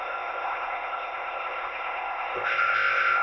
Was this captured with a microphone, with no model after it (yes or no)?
no